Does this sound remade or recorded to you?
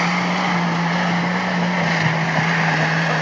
recorded